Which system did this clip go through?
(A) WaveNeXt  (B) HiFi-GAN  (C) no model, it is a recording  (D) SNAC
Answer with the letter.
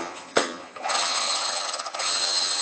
B